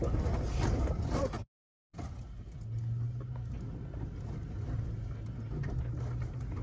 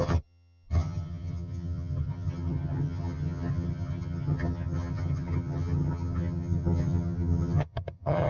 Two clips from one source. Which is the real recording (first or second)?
first